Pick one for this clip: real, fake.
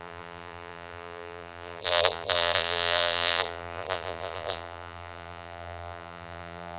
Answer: fake